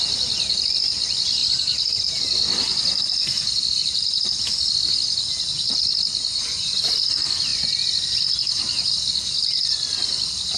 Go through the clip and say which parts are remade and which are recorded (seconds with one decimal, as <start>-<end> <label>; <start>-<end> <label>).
0.0-6.3 recorded; 6.3-6.9 remade; 6.9-10.6 recorded